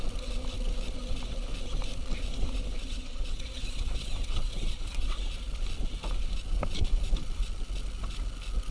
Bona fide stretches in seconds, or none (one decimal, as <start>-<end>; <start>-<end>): 0.0-2.8; 5.2-8.7